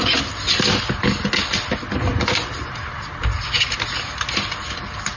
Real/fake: real